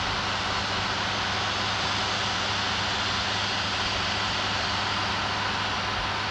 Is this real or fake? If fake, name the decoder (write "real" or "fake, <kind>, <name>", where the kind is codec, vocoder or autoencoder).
real